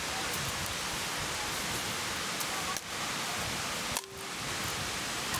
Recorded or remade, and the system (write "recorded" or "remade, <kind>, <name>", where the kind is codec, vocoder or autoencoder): recorded